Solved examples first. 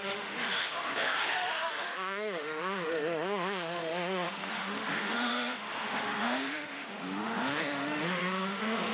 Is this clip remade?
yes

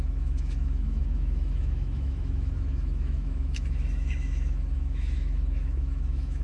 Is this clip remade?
yes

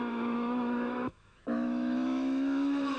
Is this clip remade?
yes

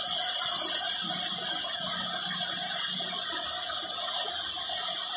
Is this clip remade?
no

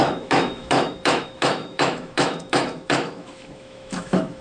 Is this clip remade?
yes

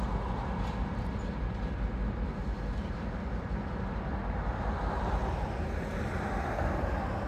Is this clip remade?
no